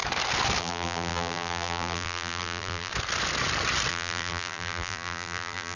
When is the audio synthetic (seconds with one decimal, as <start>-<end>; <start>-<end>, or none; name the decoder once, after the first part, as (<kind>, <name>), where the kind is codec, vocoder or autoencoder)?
0.6-2.9 (vocoder, BigVGAN v2); 3.9-5.8